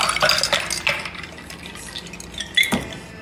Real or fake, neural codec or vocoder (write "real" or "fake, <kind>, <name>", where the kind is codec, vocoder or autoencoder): real